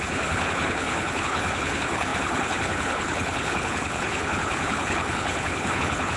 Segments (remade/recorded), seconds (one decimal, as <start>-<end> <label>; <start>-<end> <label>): 0.0-6.2 remade